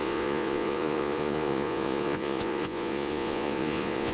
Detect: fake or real fake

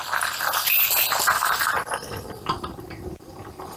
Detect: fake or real real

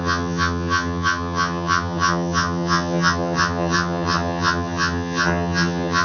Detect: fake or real fake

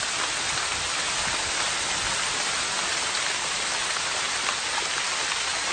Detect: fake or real real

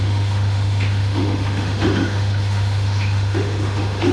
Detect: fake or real fake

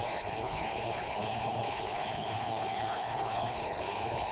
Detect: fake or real fake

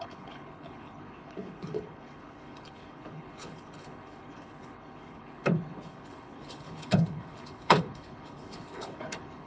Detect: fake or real fake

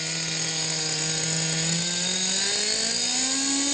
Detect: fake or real real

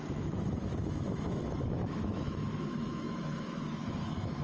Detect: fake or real fake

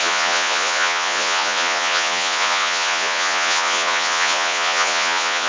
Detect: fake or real fake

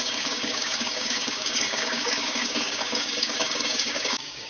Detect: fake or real fake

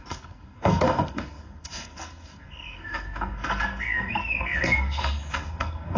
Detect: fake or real fake